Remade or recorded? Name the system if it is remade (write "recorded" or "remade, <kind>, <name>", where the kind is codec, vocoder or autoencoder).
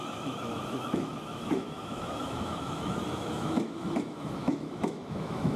remade, autoencoder, DAC-VAE